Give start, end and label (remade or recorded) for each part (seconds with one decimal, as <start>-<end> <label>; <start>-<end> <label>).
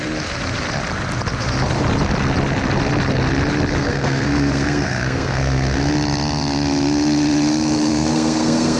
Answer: 0.0-3.7 recorded; 3.7-5.9 remade; 5.9-7.9 recorded; 7.9-8.8 remade